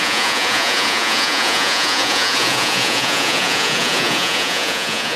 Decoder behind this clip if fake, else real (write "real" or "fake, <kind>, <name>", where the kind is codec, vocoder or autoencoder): fake, vocoder, Vocos